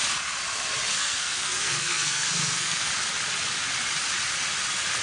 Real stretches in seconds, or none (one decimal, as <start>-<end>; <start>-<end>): 0.0-1.0; 2.9-5.0